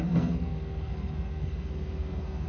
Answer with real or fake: fake